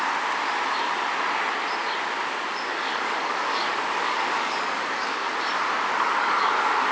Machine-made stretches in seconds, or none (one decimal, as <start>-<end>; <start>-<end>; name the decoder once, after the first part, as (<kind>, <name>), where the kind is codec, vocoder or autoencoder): 2.7-5.3 (codec, DAC); 5.9-6.9